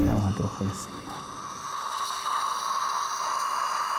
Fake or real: real